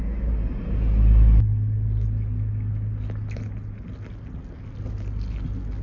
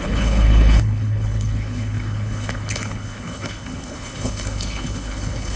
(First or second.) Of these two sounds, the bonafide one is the first